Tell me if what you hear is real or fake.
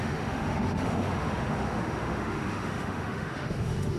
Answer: fake